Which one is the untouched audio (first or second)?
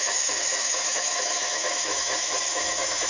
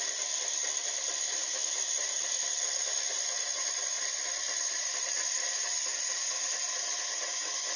second